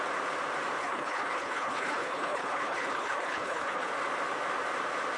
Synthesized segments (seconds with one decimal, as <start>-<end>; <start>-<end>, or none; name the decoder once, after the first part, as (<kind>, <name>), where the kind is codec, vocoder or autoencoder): 0.8-3.9 (codec, HILCodec)